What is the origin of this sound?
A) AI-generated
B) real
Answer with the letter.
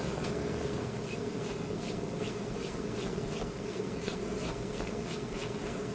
A